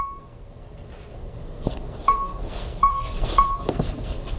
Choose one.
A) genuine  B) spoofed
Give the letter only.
B